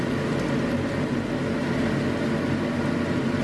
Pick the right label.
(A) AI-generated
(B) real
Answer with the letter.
B